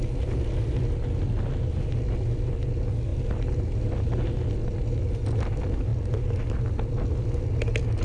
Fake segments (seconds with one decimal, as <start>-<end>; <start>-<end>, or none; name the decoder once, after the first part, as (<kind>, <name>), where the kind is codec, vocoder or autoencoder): none